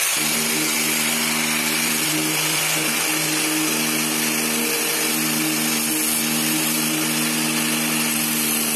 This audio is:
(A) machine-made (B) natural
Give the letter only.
B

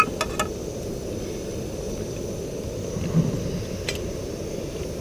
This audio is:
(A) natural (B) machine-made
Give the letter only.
A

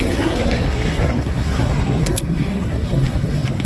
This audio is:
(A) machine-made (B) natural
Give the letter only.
A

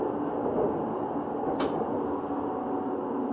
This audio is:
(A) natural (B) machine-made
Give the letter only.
A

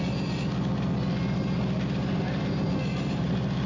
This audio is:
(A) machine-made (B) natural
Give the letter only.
B